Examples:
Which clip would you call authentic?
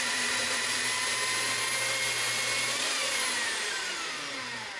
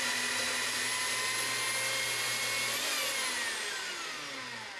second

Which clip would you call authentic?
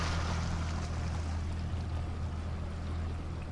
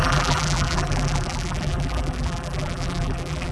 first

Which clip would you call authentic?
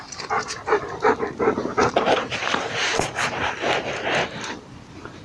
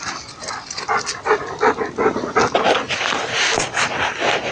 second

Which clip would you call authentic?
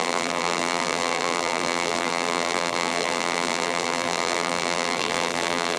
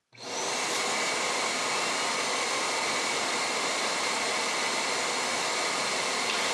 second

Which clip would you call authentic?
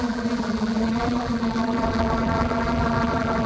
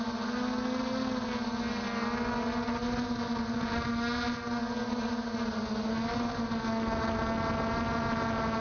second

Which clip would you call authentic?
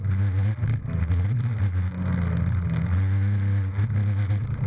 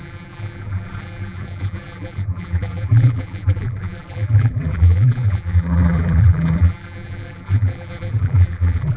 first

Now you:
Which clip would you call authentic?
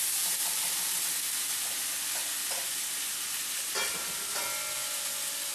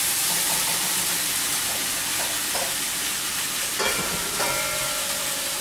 first